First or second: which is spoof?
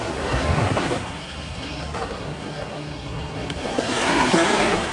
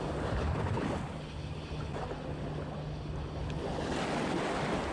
first